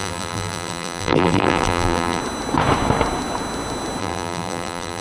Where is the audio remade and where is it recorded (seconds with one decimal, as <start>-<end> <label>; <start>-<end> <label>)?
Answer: 0.0-2.2 remade; 2.2-4.0 recorded; 4.0-5.0 remade